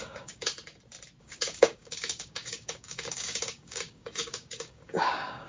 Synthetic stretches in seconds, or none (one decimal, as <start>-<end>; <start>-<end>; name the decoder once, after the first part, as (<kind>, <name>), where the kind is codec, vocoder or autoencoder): 0.0-0.5 (codec, DAC); 1.2-5.5